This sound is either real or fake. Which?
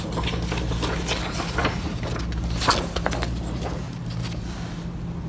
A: real